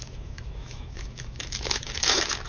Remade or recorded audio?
remade